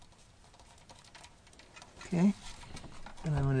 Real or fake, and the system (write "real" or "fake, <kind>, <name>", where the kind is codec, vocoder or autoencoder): real